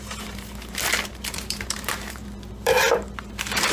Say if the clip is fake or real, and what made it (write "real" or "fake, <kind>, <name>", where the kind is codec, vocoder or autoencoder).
fake, vocoder, BigVGAN v2